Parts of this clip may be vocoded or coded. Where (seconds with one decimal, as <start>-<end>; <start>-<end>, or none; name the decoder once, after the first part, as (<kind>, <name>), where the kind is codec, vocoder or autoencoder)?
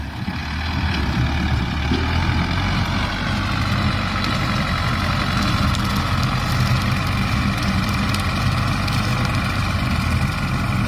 none